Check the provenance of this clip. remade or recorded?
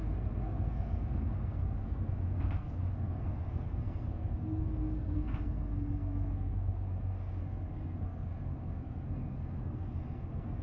remade